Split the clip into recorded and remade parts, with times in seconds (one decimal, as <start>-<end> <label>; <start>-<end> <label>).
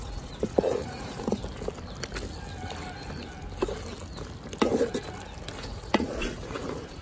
0.0-1.4 remade; 1.4-5.6 recorded; 5.6-7.0 remade